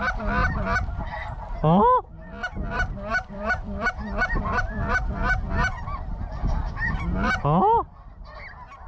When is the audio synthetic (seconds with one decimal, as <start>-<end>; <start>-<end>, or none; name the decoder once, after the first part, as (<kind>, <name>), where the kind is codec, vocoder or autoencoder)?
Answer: 3.1-6.1 (vocoder, BigVGAN v2); 6.6-7.4